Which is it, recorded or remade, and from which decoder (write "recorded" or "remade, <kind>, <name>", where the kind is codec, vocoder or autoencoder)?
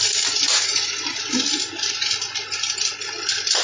recorded